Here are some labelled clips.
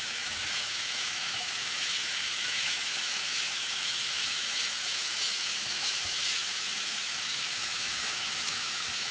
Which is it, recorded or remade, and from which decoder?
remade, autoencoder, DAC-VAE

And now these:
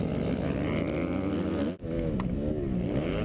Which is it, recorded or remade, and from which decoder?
recorded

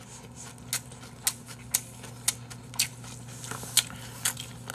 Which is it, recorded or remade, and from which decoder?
recorded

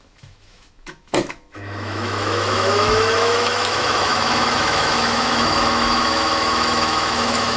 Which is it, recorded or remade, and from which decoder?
remade, autoencoder, DAC-VAE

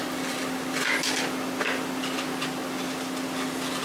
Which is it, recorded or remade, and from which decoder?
recorded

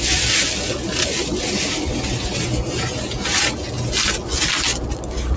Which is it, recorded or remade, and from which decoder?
recorded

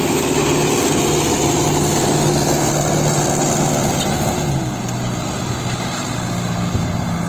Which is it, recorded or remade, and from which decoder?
recorded